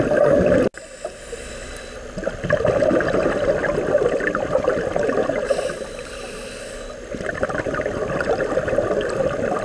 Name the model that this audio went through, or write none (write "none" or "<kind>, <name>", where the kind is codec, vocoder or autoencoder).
none